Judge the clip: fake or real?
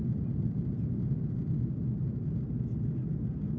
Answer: real